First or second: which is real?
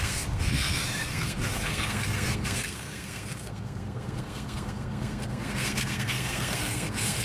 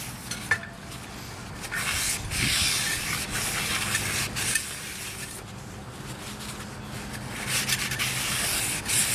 second